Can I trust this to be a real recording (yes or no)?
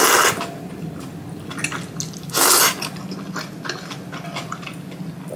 yes